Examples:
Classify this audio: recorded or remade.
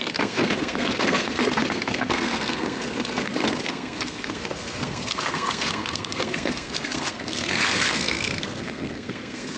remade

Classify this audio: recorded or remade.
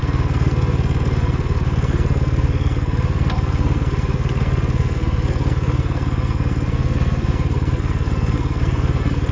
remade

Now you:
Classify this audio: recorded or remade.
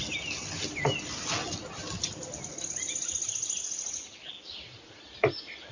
recorded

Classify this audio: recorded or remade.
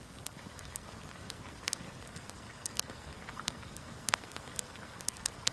remade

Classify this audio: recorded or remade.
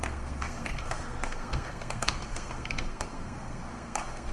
remade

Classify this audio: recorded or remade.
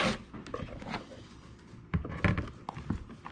recorded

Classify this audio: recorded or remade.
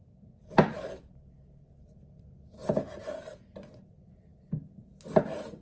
recorded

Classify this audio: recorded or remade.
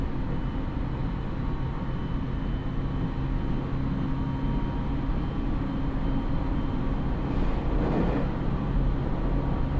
recorded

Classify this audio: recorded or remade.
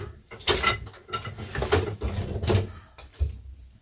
recorded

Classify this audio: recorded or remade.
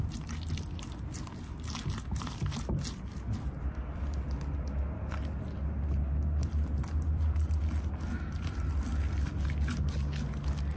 recorded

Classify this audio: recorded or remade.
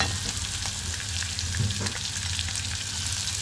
recorded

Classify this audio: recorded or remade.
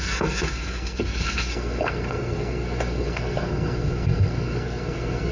remade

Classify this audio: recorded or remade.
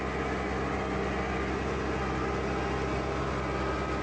recorded